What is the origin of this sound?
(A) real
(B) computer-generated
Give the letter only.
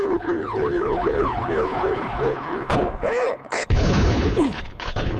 B